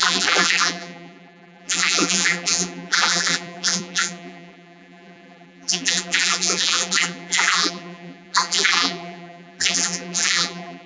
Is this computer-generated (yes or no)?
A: yes